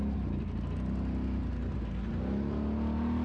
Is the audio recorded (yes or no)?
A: yes